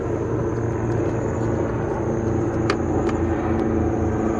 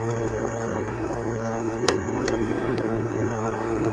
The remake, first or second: second